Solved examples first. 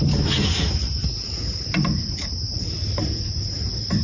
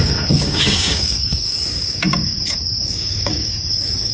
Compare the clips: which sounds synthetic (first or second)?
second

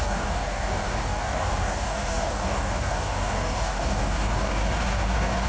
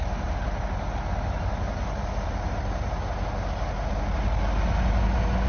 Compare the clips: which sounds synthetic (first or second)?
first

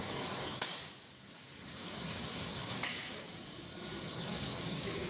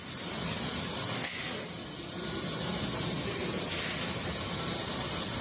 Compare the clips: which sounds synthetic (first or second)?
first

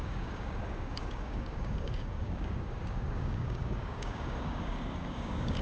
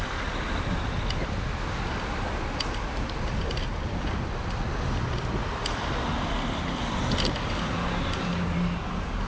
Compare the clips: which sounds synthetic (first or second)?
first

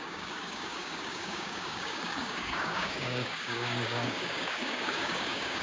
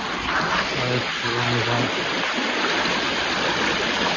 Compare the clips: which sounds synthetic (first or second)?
first